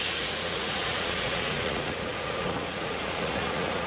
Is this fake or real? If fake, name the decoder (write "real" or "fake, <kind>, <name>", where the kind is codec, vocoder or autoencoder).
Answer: fake, vocoder, Vocos